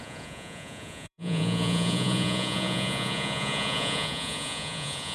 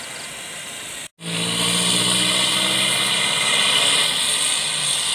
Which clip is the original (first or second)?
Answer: second